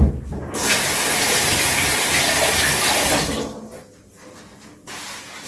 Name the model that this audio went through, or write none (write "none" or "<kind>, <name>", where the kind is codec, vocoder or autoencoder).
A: none